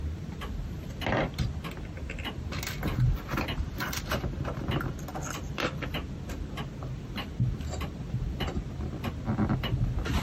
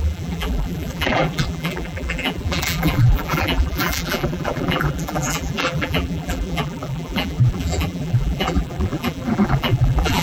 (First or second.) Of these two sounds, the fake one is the second